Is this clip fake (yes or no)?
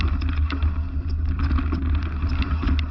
no